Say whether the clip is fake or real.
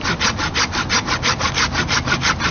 real